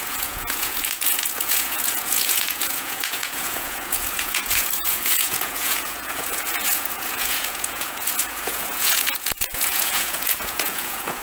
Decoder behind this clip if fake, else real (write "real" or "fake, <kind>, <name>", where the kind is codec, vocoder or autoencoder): fake, vocoder, Vocos